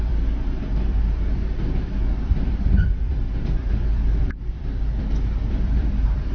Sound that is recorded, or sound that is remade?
remade